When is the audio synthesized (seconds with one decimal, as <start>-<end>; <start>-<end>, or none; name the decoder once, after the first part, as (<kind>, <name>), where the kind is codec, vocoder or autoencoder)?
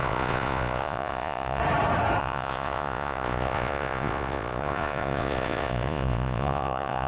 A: 0.0-1.6 (vocoder, Vocos); 2.2-7.1